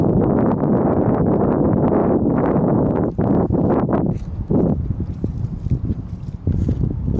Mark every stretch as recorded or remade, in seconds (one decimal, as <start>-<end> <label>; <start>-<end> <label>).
0.0-7.2 recorded

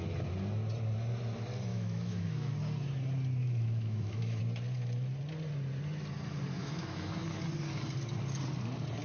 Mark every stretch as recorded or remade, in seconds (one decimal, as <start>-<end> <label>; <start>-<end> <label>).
0.0-1.7 recorded; 1.7-2.5 remade; 2.5-3.4 recorded; 3.4-4.4 remade; 4.4-6.6 recorded; 6.6-7.1 remade; 7.1-9.0 recorded

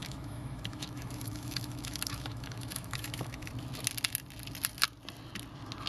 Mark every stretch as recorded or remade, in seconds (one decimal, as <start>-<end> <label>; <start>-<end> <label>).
0.0-3.5 remade; 3.5-5.9 recorded

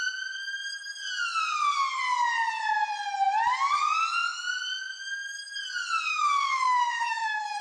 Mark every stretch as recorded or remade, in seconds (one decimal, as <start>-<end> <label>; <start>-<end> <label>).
0.0-6.1 recorded; 6.1-7.6 remade

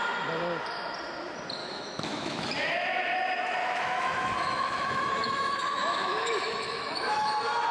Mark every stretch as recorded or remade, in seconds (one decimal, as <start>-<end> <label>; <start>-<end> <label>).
0.0-1.6 recorded; 1.6-2.5 remade; 2.5-3.6 recorded; 3.6-7.3 remade; 7.3-7.7 recorded

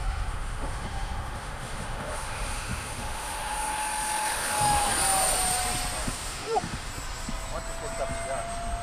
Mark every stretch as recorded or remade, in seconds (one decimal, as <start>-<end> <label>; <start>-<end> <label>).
0.0-4.9 remade; 4.9-6.0 recorded; 6.0-6.9 remade; 6.9-8.8 recorded

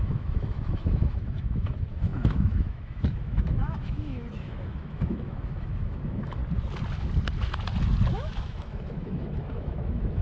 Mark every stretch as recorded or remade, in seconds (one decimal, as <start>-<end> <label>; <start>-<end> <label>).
0.0-6.4 remade; 6.4-8.1 recorded; 8.1-10.2 remade